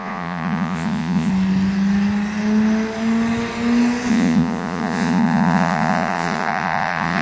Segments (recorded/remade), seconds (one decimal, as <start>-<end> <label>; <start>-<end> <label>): 0.0-1.3 remade; 1.3-4.1 recorded; 4.1-7.2 remade